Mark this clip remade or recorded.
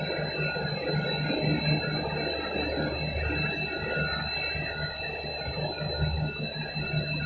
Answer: recorded